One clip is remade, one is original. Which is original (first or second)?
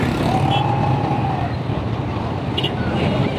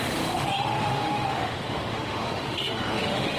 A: first